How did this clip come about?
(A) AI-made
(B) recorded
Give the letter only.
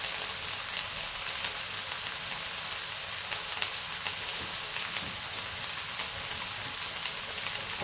B